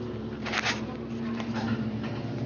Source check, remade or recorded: recorded